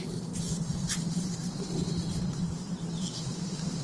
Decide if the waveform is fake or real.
real